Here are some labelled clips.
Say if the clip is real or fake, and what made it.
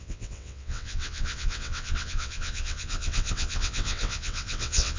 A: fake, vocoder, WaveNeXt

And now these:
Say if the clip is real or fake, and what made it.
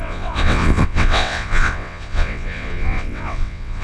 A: fake, vocoder, WaveNeXt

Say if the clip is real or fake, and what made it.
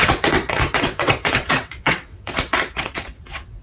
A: fake, vocoder, WaveNeXt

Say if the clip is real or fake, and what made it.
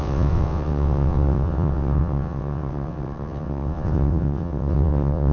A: fake, vocoder, WaveNeXt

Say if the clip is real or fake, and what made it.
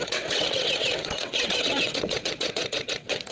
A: fake, vocoder, WaveNeXt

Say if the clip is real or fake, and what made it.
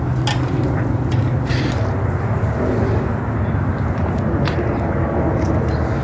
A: real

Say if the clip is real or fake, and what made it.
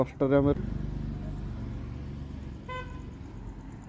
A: real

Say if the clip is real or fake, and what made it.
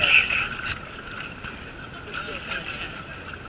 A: real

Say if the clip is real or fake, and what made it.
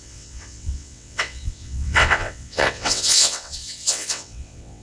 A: fake, vocoder, WaveNeXt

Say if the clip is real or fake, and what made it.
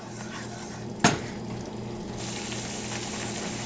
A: real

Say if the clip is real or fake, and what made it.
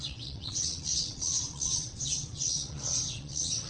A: fake, vocoder, WaveNeXt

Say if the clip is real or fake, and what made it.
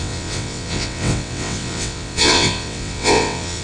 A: fake, vocoder, WaveNeXt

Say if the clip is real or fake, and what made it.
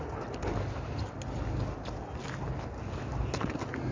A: real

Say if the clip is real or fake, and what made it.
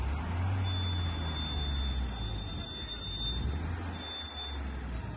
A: real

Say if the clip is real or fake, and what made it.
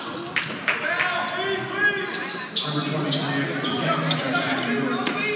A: real